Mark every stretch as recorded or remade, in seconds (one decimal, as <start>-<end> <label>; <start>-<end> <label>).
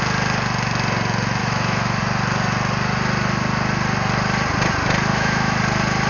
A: 0.0-1.4 recorded; 1.4-2.0 remade; 2.0-5.1 recorded; 5.1-5.6 remade; 5.6-6.1 recorded